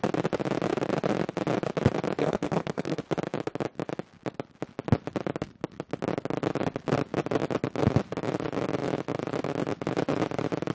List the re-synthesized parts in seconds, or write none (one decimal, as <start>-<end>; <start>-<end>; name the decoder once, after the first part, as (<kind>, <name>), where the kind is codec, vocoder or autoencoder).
2.2-3.0 (codec, SNAC)